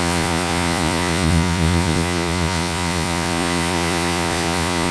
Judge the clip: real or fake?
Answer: fake